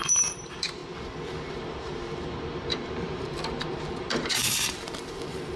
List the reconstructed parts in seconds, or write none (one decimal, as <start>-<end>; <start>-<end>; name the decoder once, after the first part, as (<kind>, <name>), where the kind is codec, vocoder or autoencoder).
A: 0.0-0.8 (vocoder, BigVGAN v2); 1.5-5.6